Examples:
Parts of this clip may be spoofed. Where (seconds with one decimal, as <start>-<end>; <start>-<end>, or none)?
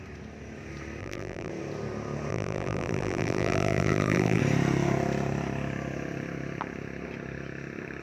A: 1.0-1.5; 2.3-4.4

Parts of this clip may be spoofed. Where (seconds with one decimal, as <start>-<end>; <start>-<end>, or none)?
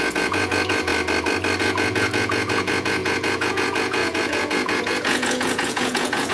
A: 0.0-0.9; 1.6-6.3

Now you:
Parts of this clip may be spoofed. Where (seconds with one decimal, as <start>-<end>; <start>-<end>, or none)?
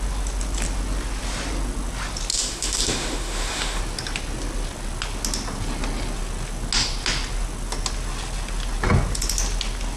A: 2.3-3.8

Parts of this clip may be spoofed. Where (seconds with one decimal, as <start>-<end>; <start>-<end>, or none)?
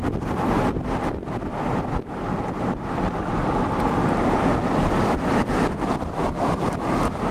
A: none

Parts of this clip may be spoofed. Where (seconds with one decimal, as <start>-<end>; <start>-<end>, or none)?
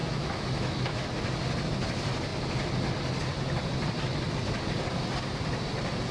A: 0.0-1.1